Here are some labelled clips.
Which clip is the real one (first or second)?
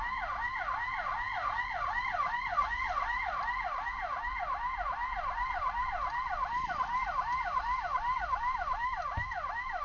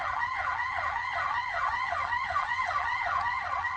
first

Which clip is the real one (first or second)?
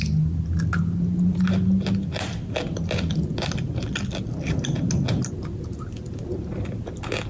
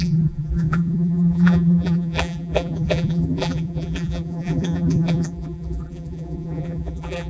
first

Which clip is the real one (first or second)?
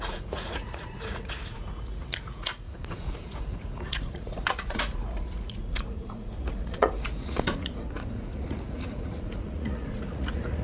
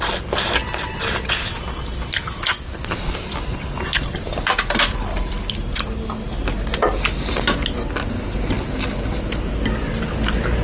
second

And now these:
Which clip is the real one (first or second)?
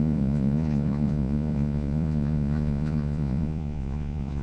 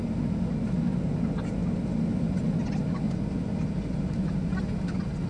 second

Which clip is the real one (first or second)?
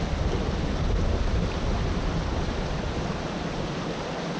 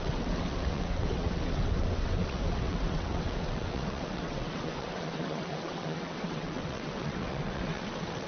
first